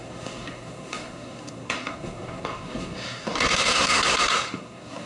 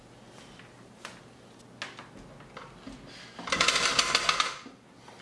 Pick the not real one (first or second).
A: first